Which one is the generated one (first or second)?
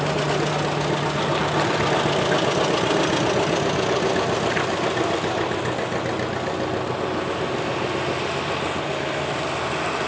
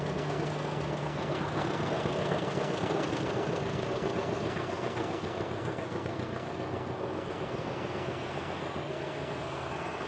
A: second